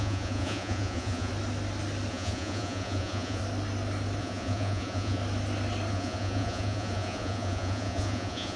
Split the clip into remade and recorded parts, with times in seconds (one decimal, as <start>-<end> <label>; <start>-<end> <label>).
0.0-1.3 remade; 1.3-2.1 recorded; 2.1-3.4 remade; 3.4-4.2 recorded; 4.2-5.2 remade; 5.2-5.9 recorded; 5.9-8.6 remade